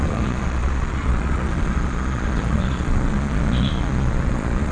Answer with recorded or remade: remade